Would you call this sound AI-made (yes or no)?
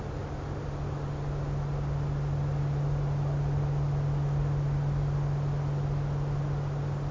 no